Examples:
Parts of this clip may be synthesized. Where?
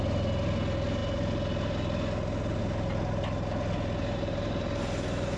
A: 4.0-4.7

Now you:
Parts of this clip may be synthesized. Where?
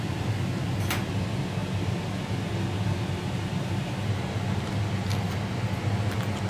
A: none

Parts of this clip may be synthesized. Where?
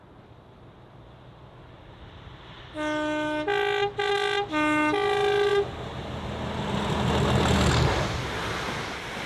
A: none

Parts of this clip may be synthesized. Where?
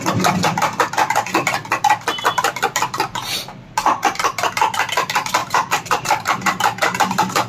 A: 5.4-7.5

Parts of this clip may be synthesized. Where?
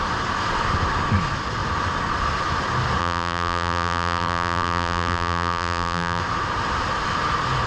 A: 3.0-6.2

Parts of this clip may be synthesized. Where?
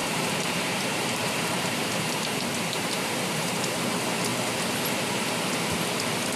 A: 0.0-3.8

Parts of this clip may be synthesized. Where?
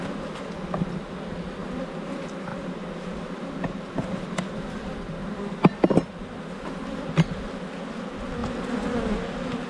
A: 2.5-5.1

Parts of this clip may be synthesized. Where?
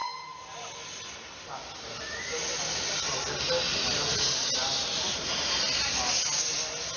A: none